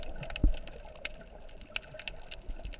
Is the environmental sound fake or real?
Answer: real